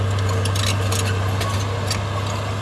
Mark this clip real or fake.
real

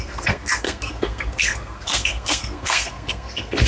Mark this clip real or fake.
fake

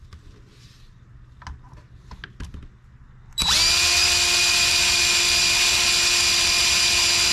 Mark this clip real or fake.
real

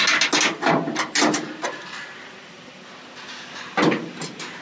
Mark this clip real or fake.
real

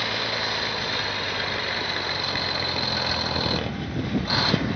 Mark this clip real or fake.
real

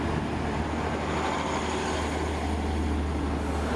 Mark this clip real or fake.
real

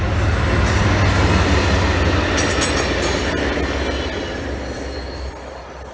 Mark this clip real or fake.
real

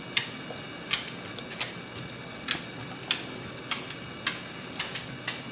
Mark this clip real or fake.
real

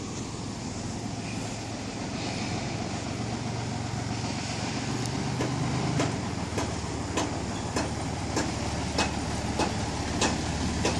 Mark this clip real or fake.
real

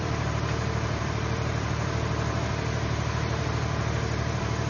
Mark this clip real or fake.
fake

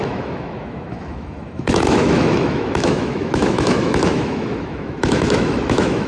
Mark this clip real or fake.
fake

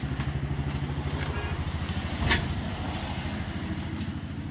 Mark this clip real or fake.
real